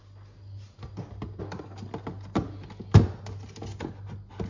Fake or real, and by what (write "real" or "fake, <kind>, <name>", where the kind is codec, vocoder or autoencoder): real